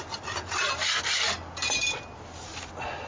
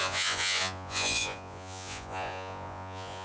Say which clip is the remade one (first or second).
second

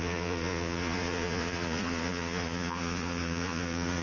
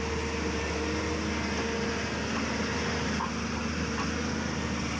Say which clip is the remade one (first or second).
first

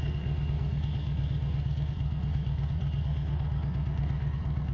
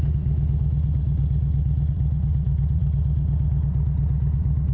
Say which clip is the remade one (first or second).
first